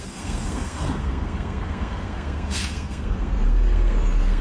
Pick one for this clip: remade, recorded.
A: remade